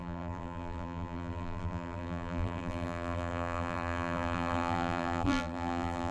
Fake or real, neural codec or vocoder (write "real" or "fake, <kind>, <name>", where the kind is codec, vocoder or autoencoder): fake, vocoder, BigVGAN v2